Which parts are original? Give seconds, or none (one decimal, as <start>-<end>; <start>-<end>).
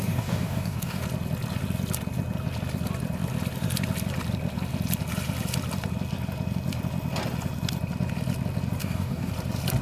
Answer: 1.0-8.8; 9.3-9.8